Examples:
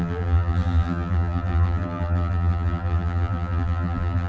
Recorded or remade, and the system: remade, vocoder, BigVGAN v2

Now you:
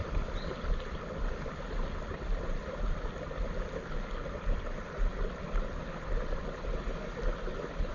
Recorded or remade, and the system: recorded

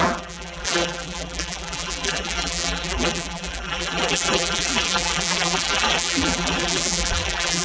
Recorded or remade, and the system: remade, vocoder, BigVGAN v2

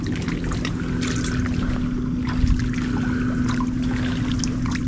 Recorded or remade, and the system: recorded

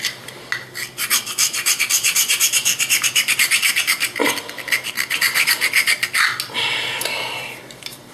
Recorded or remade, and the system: recorded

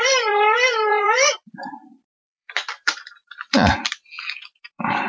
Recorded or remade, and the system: remade, vocoder, BigVGAN v2